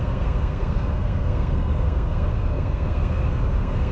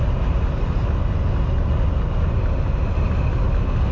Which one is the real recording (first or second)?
second